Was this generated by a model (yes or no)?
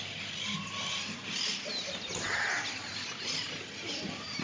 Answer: no